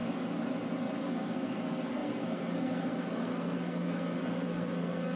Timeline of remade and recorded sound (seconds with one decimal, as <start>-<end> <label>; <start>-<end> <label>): 0.0-1.0 recorded; 1.0-5.2 remade